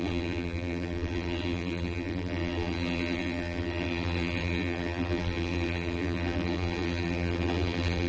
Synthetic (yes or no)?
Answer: yes